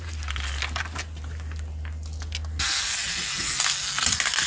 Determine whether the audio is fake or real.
real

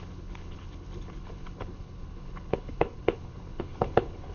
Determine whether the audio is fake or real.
fake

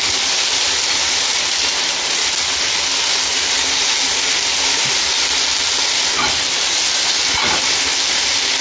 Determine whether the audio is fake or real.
real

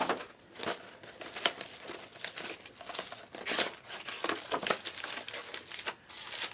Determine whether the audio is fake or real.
real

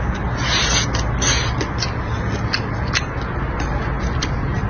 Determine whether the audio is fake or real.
real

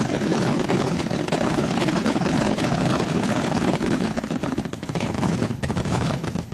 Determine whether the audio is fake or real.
fake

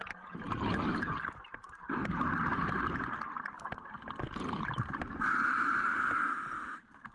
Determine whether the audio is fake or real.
real